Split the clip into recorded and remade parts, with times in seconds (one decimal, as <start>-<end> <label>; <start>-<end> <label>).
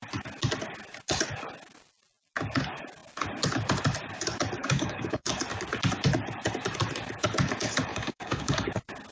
0.0-4.6 recorded; 4.6-5.3 remade; 5.3-7.9 recorded; 7.9-8.7 remade; 8.7-9.1 recorded